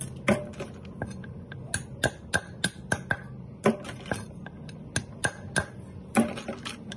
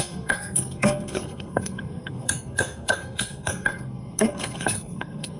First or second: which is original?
first